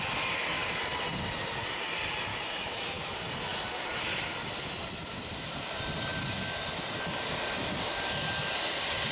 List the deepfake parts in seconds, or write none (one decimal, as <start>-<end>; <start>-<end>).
2.3-3.2